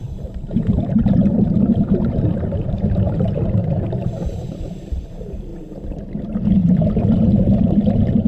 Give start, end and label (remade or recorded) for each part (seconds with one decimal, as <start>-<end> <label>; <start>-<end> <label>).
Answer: 0.0-5.5 remade; 5.5-6.1 recorded; 6.1-8.3 remade